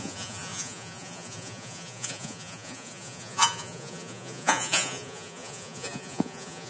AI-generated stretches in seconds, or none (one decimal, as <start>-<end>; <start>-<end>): 0.0-6.7